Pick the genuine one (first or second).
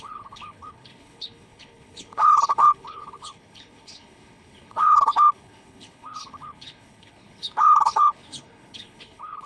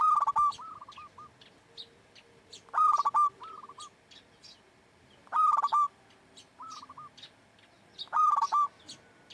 second